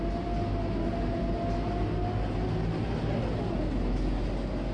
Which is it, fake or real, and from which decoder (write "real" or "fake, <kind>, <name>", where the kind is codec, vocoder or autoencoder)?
real